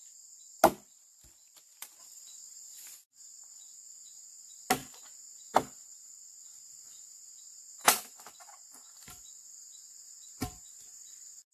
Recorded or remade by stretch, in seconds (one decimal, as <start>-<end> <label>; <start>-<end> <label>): 0.0-0.7 recorded; 0.7-2.0 remade; 2.0-11.5 recorded